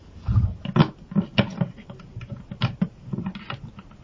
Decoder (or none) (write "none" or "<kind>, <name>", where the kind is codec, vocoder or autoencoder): none